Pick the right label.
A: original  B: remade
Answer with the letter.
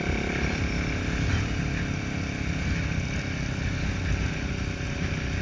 A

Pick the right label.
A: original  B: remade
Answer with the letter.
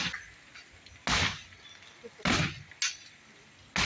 A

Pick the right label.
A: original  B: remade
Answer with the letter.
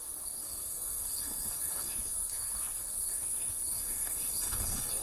B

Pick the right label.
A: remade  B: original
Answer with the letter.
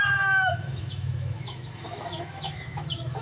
A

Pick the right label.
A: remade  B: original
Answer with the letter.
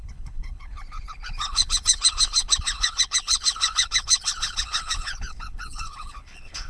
A